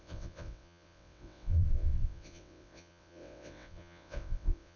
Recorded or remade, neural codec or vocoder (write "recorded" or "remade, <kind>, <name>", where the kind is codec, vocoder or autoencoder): remade, vocoder, WaveNeXt